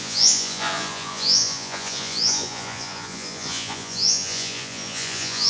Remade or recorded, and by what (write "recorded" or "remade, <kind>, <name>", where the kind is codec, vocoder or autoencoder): remade, vocoder, Vocos